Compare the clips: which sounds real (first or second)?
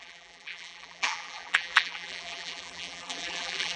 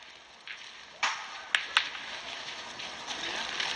second